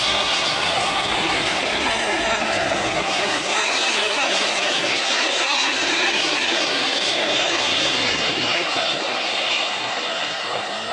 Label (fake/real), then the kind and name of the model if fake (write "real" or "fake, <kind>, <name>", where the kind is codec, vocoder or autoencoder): fake, codec, SNAC